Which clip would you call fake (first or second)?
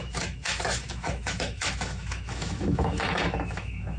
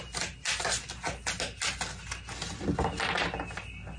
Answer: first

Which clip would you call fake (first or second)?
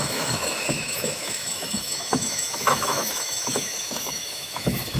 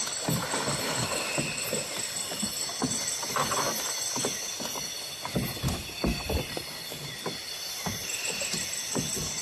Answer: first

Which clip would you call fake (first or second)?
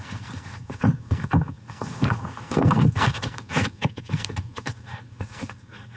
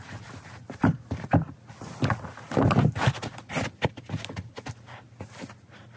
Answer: first